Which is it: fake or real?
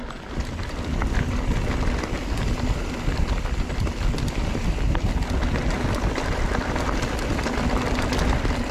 real